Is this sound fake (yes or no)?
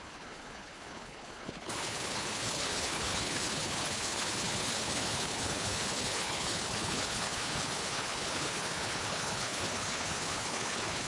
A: yes